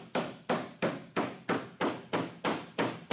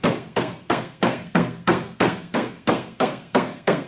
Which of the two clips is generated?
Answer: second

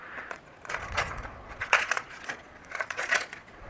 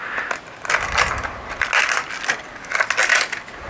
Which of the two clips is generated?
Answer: first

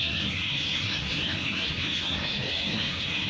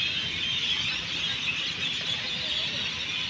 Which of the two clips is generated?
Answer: first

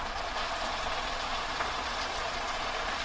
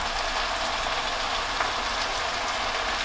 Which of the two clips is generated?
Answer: first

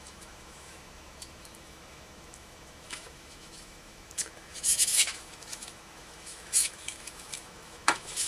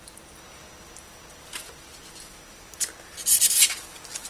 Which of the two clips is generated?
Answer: first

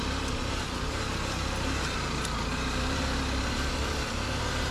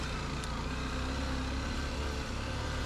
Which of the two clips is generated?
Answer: first